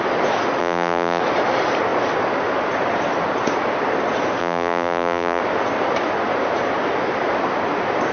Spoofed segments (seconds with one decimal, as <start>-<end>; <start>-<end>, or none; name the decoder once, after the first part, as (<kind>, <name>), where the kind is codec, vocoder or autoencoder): 0.6-1.2 (vocoder, BigVGAN v2); 4.4-5.4